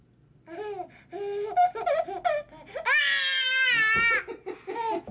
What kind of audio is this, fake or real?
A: real